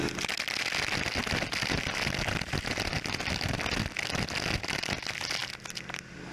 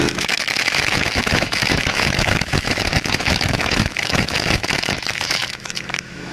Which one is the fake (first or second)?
second